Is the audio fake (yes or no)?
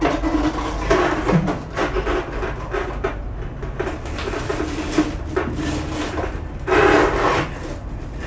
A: no